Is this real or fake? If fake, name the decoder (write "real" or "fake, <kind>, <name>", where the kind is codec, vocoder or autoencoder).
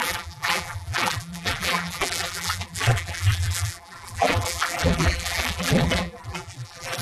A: fake, vocoder, BigVGAN v2